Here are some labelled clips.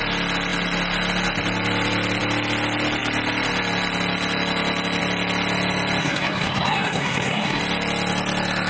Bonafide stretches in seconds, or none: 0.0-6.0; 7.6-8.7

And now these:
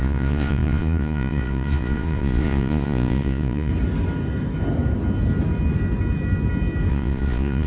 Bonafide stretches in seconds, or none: 3.7-6.9